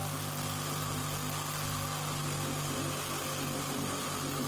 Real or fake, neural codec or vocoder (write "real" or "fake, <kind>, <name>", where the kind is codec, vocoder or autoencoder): real